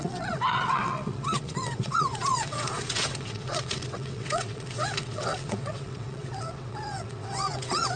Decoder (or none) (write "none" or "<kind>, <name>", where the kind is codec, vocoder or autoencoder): vocoder, WaveNeXt